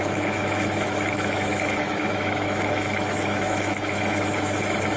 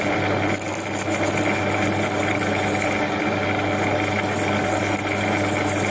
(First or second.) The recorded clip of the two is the second